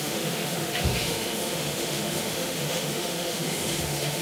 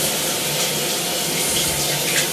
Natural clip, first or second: second